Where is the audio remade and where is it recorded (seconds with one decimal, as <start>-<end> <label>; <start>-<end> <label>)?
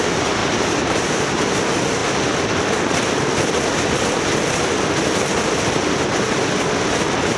0.0-0.4 recorded; 0.4-1.5 remade; 1.5-7.4 recorded